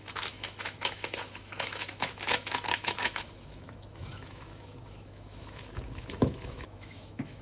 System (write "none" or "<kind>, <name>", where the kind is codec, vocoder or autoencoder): autoencoder, DAC-VAE